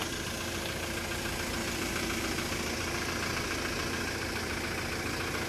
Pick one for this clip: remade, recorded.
recorded